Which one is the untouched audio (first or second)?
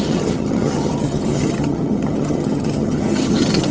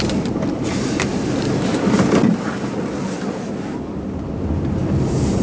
second